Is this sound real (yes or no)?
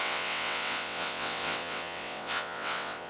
no